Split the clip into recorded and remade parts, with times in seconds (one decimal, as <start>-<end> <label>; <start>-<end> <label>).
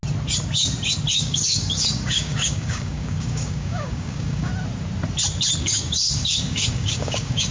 0.0-1.1 recorded; 1.1-4.5 remade; 4.5-5.6 recorded; 5.6-7.5 remade